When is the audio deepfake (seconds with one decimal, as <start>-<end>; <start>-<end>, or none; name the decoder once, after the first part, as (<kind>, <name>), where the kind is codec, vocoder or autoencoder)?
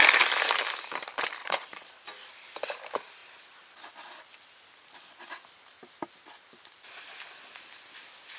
1.4-1.9 (vocoder, Vocos)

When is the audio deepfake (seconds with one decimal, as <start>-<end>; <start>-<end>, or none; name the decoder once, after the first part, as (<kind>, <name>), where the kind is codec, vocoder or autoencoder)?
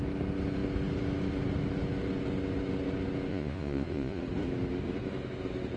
3.3-4.2 (vocoder, Vocos)